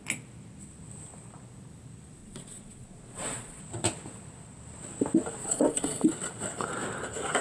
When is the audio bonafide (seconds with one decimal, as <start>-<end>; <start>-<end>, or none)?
0.0-2.2; 3.6-5.4; 6.1-7.4